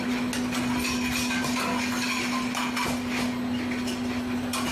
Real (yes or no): yes